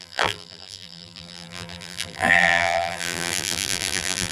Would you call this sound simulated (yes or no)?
yes